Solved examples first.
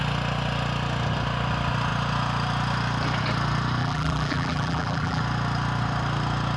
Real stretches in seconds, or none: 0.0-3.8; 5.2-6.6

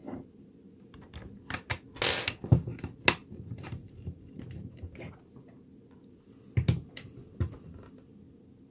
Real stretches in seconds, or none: 0.5-3.2; 5.7-8.7

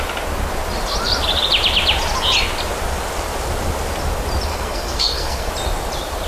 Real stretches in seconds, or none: 0.0-4.5; 5.5-6.3

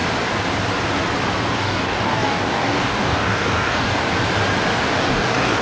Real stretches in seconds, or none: 0.0-1.5; 4.0-5.0

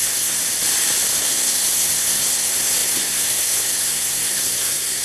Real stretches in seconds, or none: 0.4-1.1

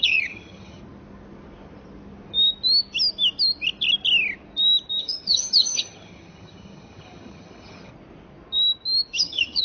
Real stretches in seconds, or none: 0.8-5.0; 7.9-9.2

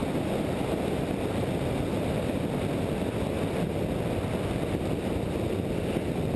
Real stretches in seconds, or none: 0.0-6.4